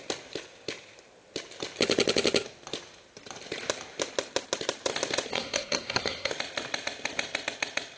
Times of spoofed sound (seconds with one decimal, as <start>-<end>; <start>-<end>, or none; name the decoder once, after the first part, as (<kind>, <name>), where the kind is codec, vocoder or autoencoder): 5.3-6.3 (codec, SNAC)